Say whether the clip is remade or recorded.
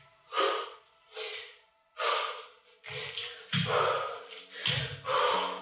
recorded